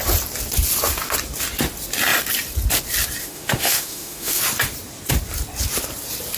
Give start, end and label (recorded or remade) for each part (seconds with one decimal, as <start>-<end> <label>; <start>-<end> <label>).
0.0-3.2 recorded; 3.2-4.4 remade; 4.4-6.4 recorded